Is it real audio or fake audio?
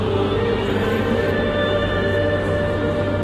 real